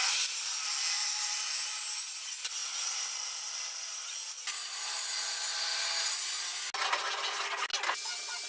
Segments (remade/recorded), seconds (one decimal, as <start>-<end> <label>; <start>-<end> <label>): 0.0-8.5 recorded